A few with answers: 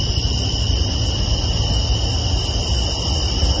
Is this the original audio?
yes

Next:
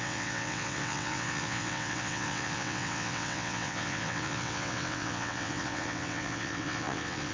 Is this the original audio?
no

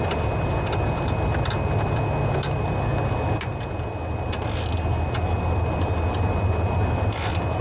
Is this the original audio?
yes